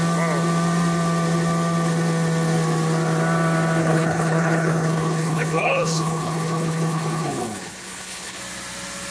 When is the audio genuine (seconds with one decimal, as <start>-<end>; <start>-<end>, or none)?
0.0-3.8; 8.4-9.1